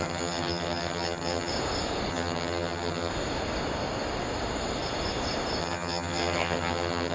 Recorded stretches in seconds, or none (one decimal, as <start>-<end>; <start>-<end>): 1.5-2.1; 3.1-5.6